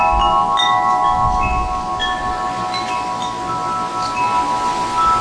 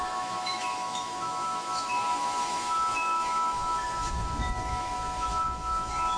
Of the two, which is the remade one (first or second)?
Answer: second